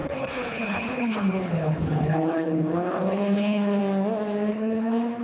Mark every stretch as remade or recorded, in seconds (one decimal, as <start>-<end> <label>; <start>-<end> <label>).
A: 0.0-3.8 remade; 3.8-4.5 recorded; 4.5-5.2 remade